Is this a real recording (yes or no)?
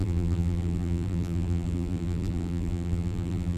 no